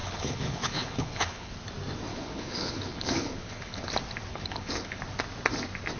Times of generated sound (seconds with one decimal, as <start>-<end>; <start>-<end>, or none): 0.0-1.5; 2.1-3.9; 4.3-5.0